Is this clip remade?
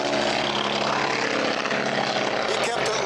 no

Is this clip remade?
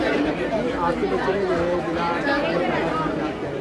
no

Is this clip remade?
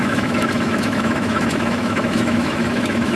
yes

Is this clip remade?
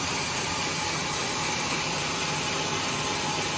no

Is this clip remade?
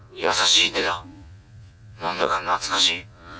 yes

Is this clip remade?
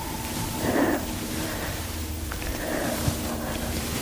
yes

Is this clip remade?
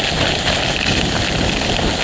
no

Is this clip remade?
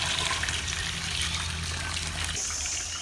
no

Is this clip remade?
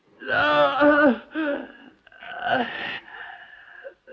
no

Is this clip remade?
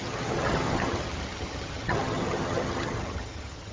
yes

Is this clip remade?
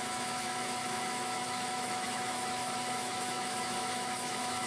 yes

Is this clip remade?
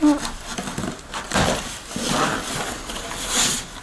no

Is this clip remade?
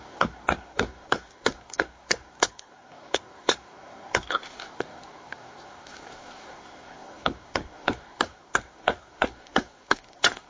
yes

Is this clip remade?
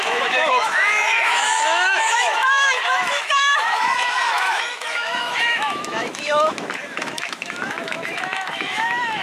yes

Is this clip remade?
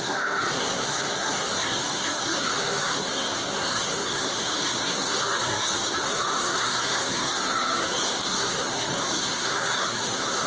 yes